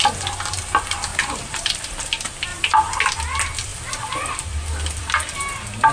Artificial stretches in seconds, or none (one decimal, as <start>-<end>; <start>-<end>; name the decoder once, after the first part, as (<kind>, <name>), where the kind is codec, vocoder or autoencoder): 1.1-2.0 (vocoder, BigVGAN v2); 2.5-3.0